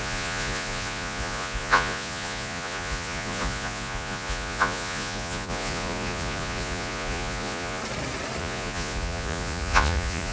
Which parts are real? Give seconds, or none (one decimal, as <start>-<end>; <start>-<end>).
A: 7.8-8.4